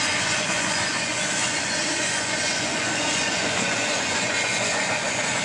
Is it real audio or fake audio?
fake